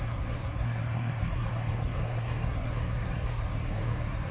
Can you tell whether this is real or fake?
fake